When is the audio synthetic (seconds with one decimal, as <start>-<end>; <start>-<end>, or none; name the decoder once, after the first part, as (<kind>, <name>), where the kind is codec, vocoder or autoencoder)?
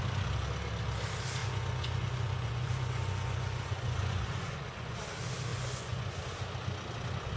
1.4-5.0 (vocoder, Vocos); 5.5-6.2